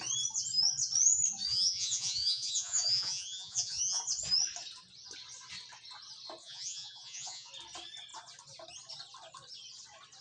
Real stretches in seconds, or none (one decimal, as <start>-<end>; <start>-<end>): 0.0-1.5; 4.0-6.4; 7.5-10.2